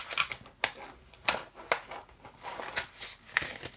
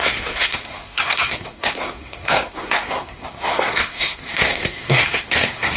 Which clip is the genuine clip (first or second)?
first